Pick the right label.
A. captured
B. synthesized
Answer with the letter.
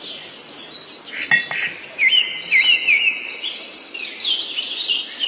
A